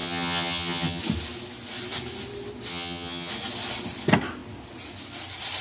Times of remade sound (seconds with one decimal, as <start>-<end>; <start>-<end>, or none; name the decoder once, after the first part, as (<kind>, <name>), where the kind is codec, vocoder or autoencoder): 0.0-1.0 (vocoder, HiFi-GAN); 2.7-3.3